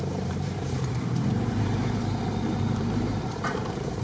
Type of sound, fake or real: fake